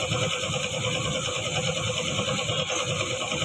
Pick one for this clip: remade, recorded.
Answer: recorded